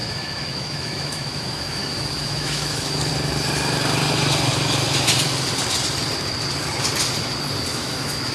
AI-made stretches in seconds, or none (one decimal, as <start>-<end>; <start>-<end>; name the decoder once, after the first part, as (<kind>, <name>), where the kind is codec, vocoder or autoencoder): 0.0-3.1 (autoencoder, DAC-VAE); 7.7-8.3